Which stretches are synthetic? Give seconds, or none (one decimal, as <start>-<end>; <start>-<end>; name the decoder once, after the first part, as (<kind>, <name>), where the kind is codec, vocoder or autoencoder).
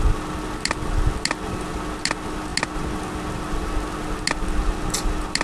none